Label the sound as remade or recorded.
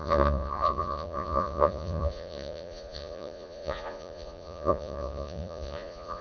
remade